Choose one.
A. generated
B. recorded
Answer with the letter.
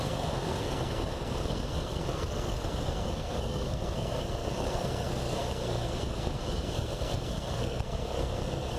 A